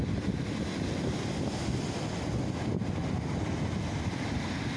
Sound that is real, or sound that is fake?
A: real